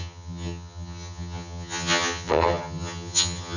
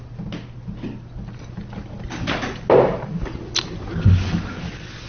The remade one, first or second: first